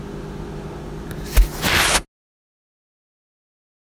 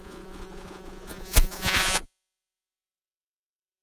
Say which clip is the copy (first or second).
second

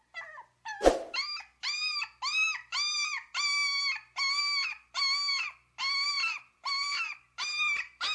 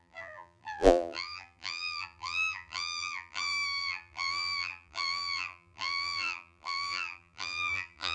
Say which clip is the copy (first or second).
second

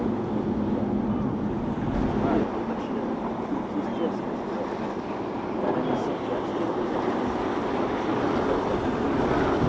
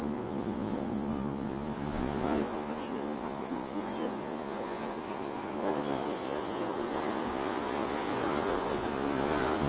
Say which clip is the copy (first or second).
second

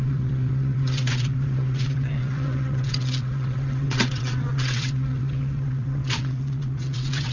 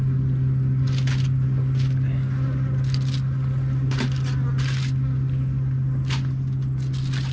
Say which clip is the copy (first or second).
first